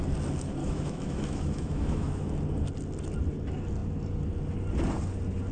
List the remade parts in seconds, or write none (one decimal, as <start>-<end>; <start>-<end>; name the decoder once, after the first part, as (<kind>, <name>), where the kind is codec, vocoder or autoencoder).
0.6-2.3 (autoencoder, DAC-VAE)